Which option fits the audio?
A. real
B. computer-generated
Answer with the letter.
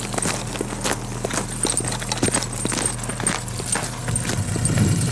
A